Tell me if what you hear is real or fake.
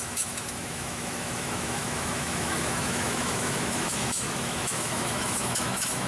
fake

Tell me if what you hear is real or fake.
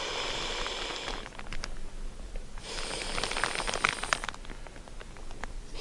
real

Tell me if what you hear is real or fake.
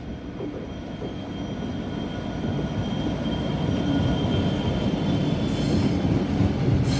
real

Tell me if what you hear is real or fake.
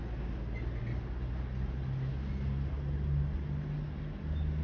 real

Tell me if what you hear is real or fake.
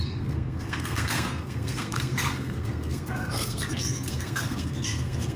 fake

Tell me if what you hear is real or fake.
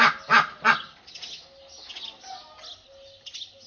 real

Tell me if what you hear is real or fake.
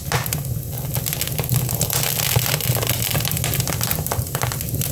real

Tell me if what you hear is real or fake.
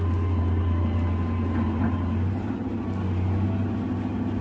real